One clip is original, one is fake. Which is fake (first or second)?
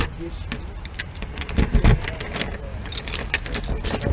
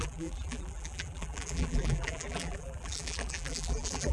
second